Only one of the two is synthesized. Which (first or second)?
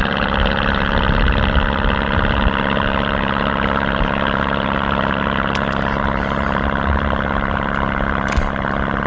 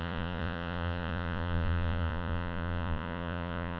second